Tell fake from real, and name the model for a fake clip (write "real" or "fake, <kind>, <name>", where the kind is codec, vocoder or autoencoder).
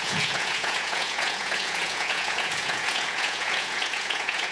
fake, vocoder, Vocos